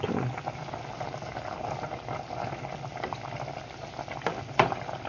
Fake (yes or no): no